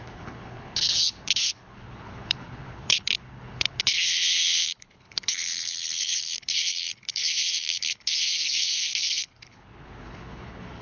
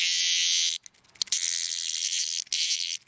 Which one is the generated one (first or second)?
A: first